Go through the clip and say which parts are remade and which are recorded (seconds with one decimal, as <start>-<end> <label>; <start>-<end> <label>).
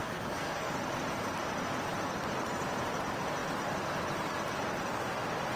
0.0-0.7 remade; 0.7-5.6 recorded